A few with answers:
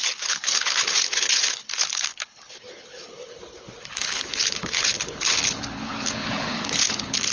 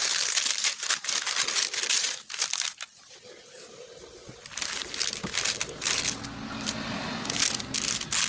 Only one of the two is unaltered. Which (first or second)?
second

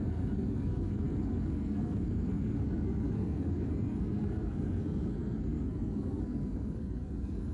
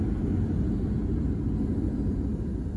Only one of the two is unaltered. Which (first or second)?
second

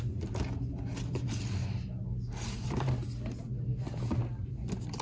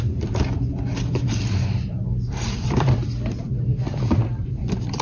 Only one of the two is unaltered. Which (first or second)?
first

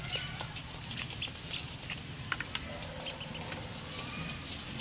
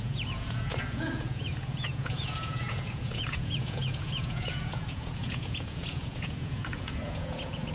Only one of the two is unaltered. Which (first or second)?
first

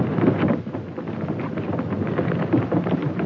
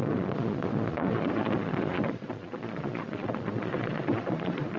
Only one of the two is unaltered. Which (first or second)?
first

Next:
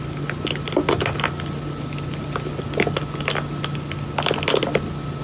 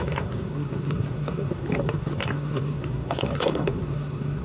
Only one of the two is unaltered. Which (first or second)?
first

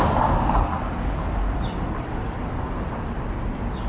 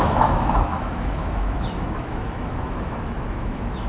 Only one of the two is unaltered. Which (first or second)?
first